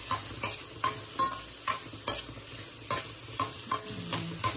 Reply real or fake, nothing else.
real